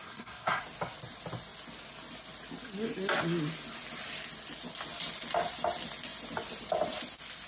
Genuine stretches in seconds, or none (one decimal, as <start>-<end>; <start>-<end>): 0.6-7.5